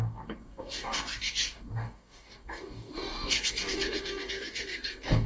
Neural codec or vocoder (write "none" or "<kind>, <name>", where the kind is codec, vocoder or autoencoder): codec, DAC